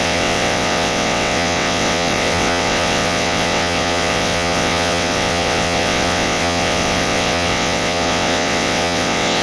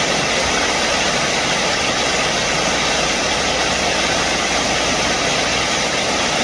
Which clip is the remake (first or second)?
first